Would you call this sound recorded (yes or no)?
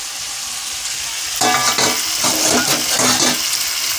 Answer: yes